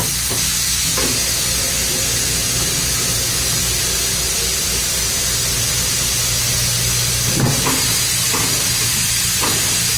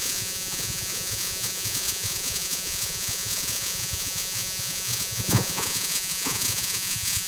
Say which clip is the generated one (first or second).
second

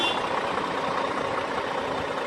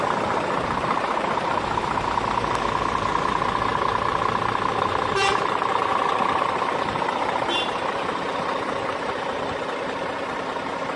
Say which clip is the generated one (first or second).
second